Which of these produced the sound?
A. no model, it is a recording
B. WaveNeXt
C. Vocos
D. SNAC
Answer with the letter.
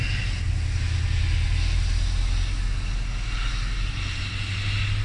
A